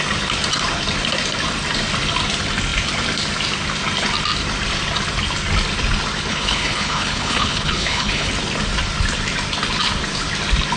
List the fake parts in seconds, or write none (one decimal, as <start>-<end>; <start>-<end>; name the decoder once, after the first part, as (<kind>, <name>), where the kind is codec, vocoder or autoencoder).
6.3-8.3 (codec, HILCodec)